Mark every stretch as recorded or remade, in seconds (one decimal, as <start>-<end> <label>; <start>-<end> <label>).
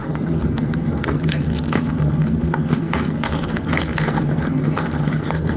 0.0-5.6 remade